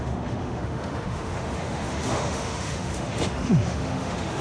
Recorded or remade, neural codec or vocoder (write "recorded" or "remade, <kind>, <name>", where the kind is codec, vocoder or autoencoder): remade, autoencoder, DAC-VAE